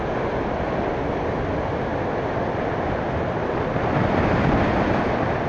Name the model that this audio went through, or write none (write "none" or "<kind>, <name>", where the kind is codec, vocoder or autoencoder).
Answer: none